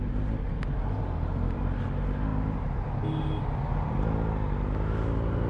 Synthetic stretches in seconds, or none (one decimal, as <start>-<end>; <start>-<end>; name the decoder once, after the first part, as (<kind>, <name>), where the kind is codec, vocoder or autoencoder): none